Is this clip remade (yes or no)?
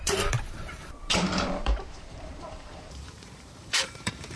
yes